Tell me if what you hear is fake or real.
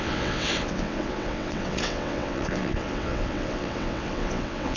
fake